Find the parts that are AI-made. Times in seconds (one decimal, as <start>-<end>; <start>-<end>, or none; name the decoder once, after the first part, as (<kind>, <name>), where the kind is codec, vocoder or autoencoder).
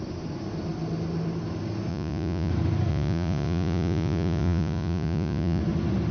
1.9-2.5 (vocoder, Vocos); 2.9-5.6